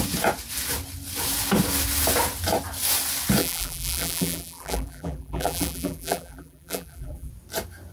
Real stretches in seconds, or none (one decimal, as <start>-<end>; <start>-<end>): 0.0-3.4; 7.3-7.9